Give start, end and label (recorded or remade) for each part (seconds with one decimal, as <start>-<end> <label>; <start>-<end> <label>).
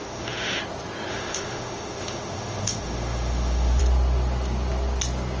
0.0-0.6 remade; 0.6-1.1 recorded; 1.1-3.8 remade; 3.8-5.4 recorded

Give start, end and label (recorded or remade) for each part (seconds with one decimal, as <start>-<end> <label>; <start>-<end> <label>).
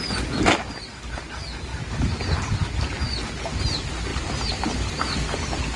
0.0-4.1 recorded; 4.1-4.7 remade; 4.7-5.8 recorded